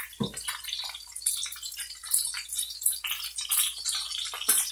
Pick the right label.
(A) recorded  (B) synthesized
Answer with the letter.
B